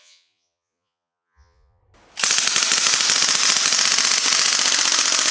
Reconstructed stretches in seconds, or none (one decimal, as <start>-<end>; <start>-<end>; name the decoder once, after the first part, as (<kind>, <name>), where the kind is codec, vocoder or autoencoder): 0.0-1.8 (vocoder, Vocos)